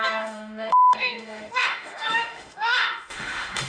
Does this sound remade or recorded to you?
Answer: remade